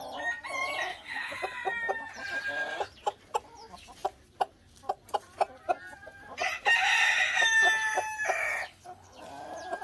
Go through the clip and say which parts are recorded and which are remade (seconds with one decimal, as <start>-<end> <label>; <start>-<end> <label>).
0.0-0.9 recorded; 0.9-1.4 remade; 1.4-8.6 recorded; 8.6-9.2 remade; 9.2-9.8 recorded